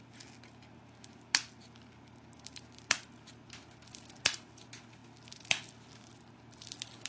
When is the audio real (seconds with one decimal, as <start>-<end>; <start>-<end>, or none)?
0.0-7.1